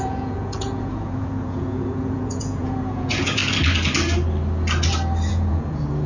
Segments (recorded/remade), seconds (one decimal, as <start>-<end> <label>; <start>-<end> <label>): 0.0-3.4 remade; 3.4-5.3 recorded; 5.3-6.1 remade